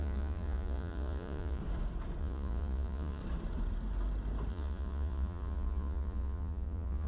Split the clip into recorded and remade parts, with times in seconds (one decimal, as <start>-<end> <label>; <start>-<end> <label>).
0.0-1.6 remade; 1.6-2.2 recorded; 2.2-3.2 remade; 3.2-4.5 recorded; 4.5-7.1 remade